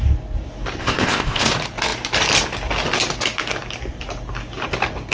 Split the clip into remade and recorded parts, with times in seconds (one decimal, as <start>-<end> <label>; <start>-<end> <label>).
0.0-0.8 recorded; 0.8-1.5 remade; 1.5-5.1 recorded